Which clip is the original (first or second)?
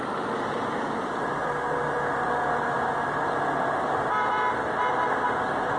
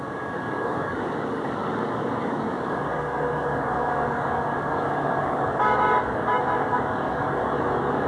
first